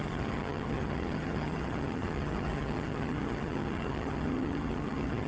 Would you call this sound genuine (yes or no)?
no